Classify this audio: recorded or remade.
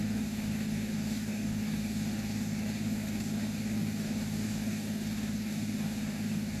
remade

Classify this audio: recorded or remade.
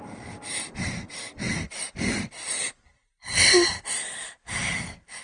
recorded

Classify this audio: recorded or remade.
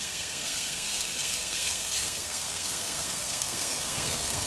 remade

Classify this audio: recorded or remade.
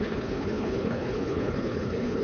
remade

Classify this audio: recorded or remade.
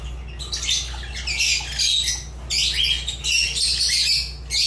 recorded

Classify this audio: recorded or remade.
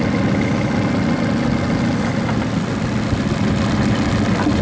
recorded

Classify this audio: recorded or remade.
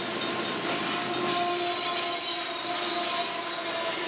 recorded